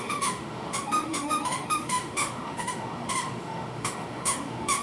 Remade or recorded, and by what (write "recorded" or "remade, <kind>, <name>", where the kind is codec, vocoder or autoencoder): remade, autoencoder, DAC-VAE